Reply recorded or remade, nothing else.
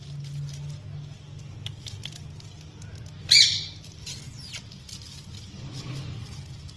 recorded